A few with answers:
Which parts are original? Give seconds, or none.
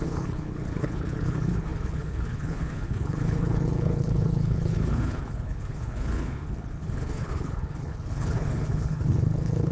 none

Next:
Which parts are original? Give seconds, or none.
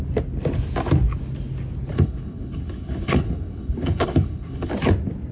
0.0-1.9; 4.7-5.3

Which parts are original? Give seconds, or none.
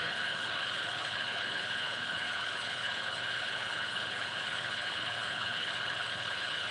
none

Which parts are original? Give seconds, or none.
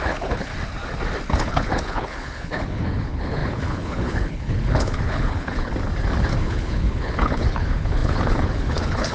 0.5-1.4; 5.7-6.4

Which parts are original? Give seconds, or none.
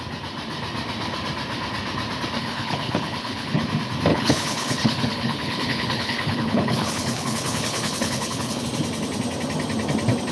0.0-2.4; 3.6-4.1; 8.6-10.3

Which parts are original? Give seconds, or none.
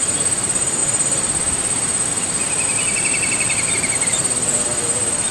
0.0-5.3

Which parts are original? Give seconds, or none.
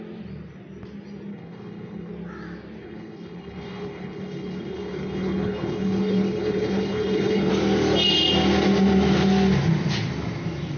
0.0-1.3; 2.1-2.8; 7.5-10.8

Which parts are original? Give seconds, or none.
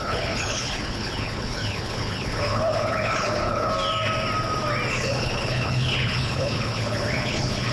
3.7-4.9